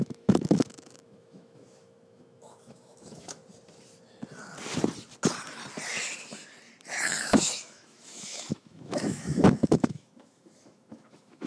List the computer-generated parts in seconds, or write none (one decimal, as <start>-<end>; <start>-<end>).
0.0-3.4; 7.0-11.5

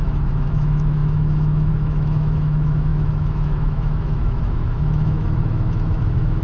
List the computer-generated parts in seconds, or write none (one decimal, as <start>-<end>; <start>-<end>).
0.0-6.4

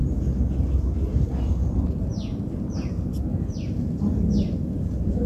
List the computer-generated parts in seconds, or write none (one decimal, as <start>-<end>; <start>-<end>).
none

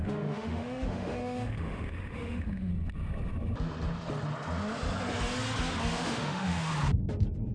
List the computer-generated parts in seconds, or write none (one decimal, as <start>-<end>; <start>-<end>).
0.0-2.7; 5.9-6.7

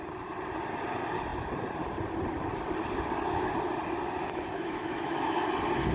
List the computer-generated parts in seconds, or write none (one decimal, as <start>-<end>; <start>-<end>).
4.2-5.5